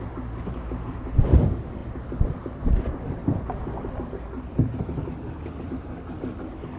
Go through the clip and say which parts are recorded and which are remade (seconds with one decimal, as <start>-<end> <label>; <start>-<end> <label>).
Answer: 0.0-6.8 recorded